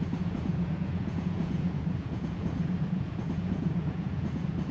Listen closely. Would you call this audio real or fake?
fake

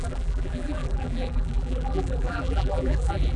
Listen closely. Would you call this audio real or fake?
fake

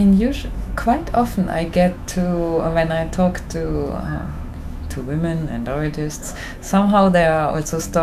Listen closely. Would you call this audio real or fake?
fake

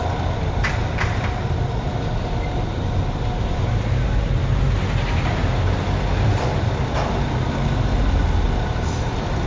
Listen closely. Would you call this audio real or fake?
real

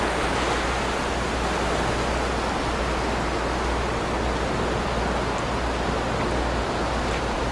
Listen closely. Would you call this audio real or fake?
real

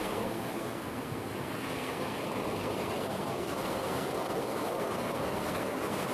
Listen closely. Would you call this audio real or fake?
fake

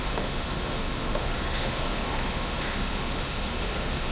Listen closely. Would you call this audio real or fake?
fake